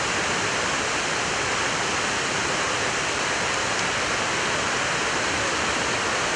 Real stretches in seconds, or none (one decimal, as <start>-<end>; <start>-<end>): 0.0-6.4